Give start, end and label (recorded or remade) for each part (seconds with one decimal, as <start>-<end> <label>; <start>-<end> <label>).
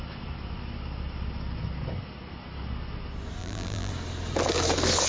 0.0-3.4 recorded; 3.4-3.9 remade; 3.9-5.1 recorded